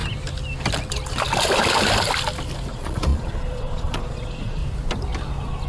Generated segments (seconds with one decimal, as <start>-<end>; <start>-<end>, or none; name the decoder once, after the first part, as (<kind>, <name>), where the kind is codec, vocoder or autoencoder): 2.7-4.6 (vocoder, Vocos)